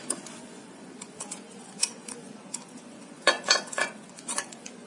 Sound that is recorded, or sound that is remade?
remade